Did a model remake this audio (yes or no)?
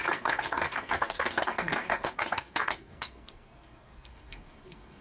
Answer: yes